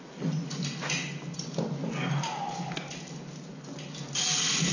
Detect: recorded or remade recorded